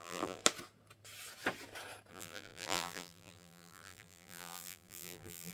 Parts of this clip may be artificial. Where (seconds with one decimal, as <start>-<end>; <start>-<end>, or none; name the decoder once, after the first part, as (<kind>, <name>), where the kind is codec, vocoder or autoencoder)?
0.0-0.4 (vocoder, BigVGAN v2); 2.1-5.5